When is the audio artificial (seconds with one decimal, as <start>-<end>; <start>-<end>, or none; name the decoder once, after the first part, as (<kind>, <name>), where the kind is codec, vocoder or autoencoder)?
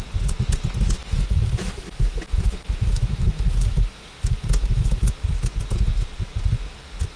1.0-5.1 (autoencoder, DAC-VAE)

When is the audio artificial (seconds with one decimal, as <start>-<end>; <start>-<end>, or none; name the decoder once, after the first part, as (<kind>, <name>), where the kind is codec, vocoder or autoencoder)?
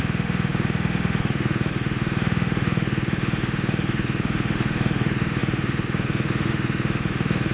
0.0-7.5 (autoencoder, DAC-VAE)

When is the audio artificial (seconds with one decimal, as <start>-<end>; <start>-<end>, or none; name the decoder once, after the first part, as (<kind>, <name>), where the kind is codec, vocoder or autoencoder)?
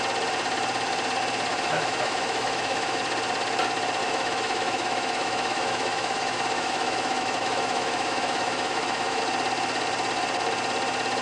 1.5-3.0 (autoencoder, DAC-VAE); 4.0-9.2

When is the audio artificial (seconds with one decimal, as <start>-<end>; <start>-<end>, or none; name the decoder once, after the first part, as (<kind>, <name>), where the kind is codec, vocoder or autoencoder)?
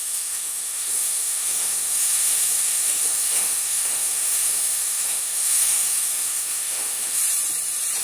0.0-7.2 (autoencoder, DAC-VAE)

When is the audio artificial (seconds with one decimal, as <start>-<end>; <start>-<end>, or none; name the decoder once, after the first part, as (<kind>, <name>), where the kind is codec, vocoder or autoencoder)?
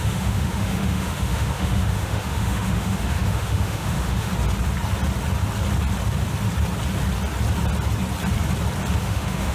0.0-4.3 (autoencoder, DAC-VAE); 9.0-9.5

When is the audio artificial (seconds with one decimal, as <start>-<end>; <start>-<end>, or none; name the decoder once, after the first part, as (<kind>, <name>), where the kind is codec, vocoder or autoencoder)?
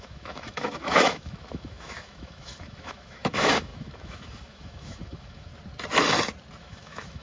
0.0-5.5 (autoencoder, DAC-VAE); 6.6-7.2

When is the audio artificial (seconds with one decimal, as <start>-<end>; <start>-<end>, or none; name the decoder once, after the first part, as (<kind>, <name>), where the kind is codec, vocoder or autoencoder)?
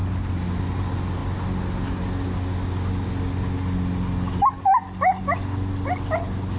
none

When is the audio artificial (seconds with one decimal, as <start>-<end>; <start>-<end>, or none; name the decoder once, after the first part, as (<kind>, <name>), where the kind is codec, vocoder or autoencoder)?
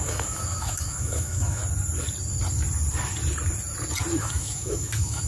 0.0-1.6 (autoencoder, DAC-VAE); 4.2-5.3